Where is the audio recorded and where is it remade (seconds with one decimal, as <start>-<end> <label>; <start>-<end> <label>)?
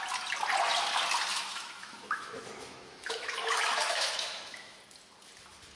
0.0-1.3 recorded; 1.3-4.8 remade; 4.8-5.8 recorded